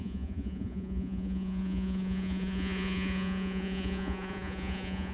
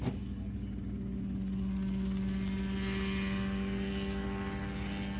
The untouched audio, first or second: second